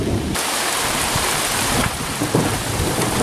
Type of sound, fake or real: fake